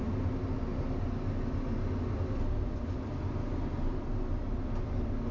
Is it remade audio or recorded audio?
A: recorded